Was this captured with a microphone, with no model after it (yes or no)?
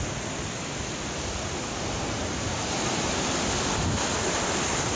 yes